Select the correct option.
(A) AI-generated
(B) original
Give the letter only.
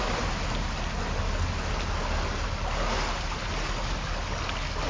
B